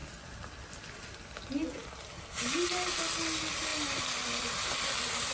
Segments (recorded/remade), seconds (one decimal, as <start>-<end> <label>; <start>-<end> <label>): 0.0-5.3 recorded